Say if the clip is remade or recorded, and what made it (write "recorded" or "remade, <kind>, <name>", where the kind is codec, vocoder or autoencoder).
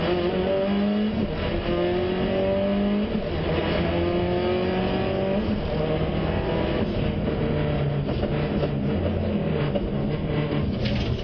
recorded